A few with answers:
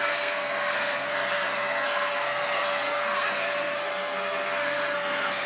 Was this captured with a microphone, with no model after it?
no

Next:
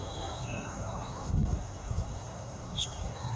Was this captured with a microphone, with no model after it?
no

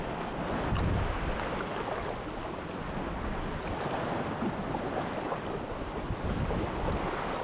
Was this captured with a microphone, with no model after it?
yes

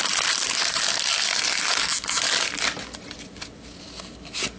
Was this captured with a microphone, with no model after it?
yes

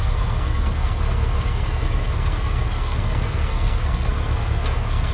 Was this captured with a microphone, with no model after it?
no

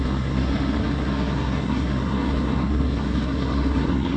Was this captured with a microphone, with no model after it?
no